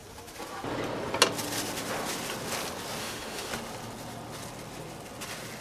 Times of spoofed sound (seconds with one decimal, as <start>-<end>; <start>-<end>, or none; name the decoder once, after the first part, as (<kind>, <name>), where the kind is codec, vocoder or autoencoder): 3.0-3.5 (autoencoder, DAC-VAE)